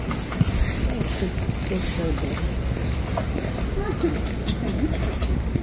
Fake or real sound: real